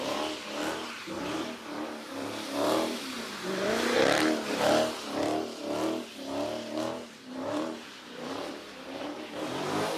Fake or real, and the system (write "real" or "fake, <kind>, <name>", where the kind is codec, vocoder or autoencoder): fake, vocoder, BigVGAN v2